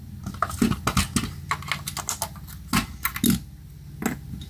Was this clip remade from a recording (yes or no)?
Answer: no